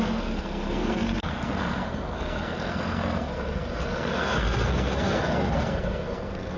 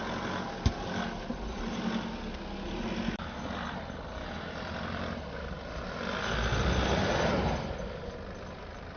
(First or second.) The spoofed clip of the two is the first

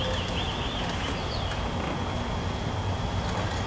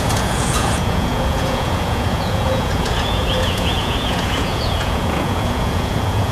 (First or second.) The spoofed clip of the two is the second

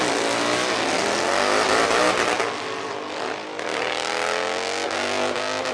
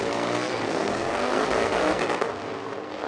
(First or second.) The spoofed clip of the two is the second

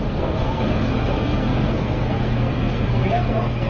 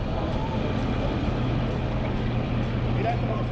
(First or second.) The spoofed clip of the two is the first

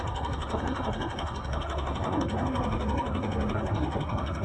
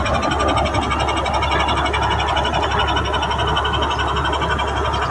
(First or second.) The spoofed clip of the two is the first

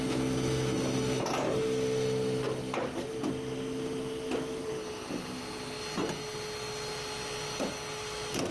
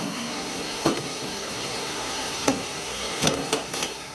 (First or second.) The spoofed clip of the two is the second